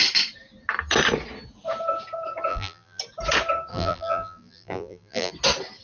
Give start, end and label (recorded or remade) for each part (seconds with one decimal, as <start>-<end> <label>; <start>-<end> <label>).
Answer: 0.0-2.5 recorded; 2.5-3.0 remade; 3.0-3.7 recorded; 3.7-5.3 remade; 5.3-5.8 recorded